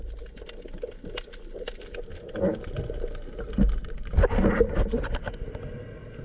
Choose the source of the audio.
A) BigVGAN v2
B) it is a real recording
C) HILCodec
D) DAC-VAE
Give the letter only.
B